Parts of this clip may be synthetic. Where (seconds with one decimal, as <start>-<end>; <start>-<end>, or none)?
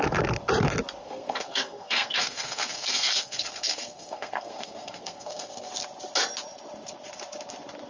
1.0-5.7